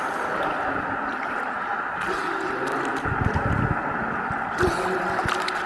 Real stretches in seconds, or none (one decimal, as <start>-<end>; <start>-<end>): 0.0-5.7